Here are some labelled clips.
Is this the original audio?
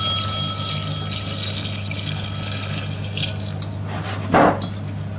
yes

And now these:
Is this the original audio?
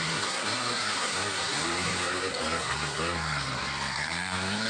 no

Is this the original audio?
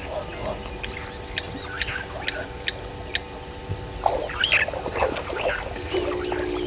yes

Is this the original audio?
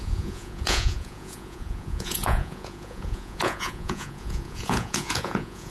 no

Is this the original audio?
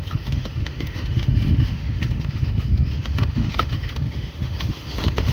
no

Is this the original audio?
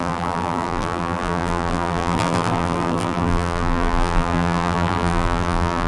no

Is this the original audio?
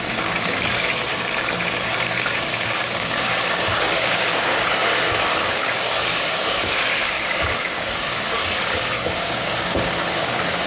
no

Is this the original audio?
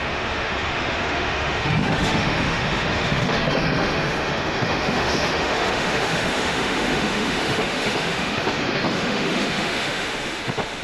no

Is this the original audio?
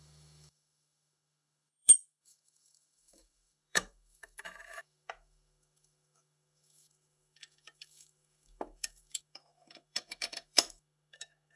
no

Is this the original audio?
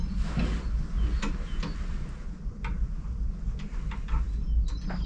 yes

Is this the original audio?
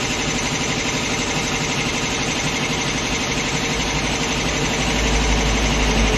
yes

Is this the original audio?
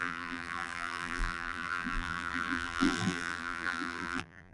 no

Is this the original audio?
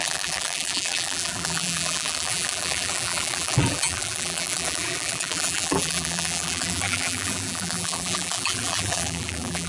no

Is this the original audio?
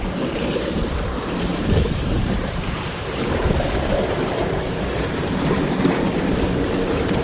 no